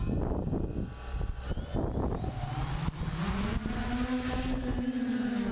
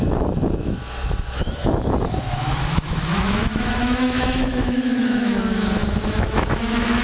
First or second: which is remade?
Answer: second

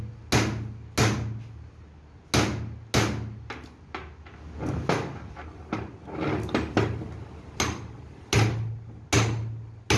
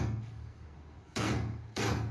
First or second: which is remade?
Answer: second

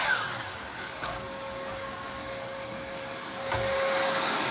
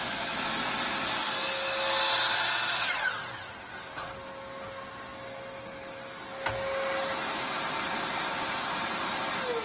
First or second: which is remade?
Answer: first